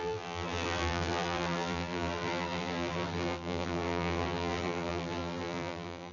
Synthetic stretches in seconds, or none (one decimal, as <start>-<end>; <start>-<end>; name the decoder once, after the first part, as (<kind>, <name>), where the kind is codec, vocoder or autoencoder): 0.0-6.1 (vocoder, BigVGAN v2)